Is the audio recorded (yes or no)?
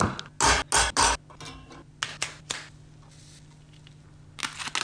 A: yes